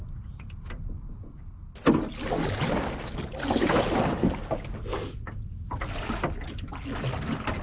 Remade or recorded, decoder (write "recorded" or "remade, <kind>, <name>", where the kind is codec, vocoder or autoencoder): recorded